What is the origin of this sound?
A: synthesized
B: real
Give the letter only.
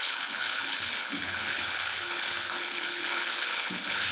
A